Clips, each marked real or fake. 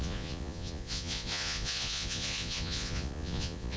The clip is fake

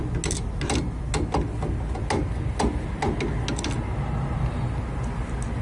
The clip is real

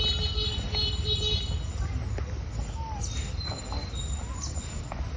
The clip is real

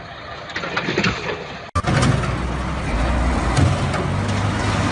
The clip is real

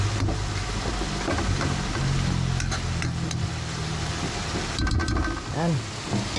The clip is real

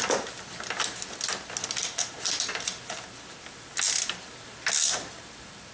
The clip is real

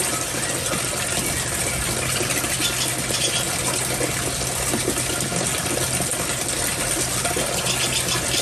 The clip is real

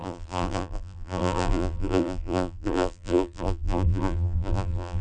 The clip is fake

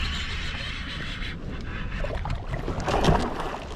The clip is real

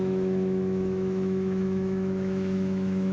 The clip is fake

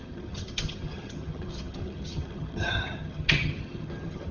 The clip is fake